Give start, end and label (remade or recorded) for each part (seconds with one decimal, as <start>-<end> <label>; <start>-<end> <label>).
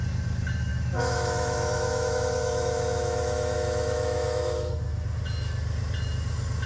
0.0-0.7 recorded; 0.7-4.7 remade; 4.7-6.7 recorded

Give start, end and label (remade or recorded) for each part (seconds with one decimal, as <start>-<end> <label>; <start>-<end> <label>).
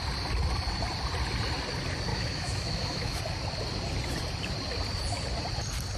0.0-2.1 recorded; 2.1-3.2 remade; 3.2-6.0 recorded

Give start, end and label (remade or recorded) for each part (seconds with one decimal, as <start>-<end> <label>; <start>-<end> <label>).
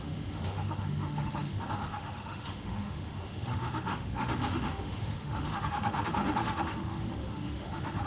0.0-8.1 remade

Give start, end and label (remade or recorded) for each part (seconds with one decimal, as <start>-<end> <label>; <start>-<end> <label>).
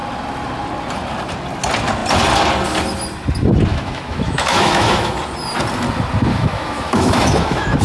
0.0-3.7 recorded; 3.7-5.1 remade; 5.1-6.3 recorded; 6.3-7.8 remade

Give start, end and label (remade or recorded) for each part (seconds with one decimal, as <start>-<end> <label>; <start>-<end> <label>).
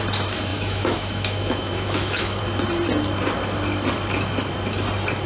0.0-0.5 recorded; 0.5-2.4 remade; 2.4-5.3 recorded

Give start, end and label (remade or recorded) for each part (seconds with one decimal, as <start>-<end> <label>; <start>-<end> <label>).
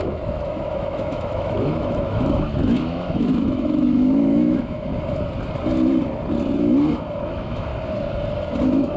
0.0-4.9 remade; 4.9-7.2 recorded; 7.2-7.7 remade; 7.7-8.6 recorded; 8.6-9.0 remade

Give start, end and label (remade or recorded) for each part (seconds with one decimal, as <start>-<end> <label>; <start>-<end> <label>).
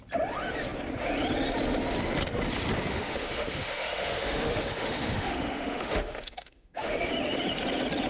0.0-2.9 recorded; 2.9-7.1 remade; 7.1-8.1 recorded